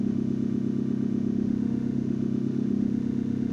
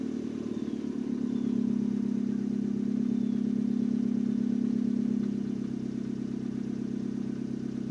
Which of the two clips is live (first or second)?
second